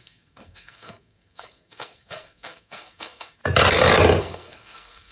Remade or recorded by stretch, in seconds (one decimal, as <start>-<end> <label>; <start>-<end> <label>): 0.0-3.4 remade; 3.4-4.2 recorded; 4.2-5.1 remade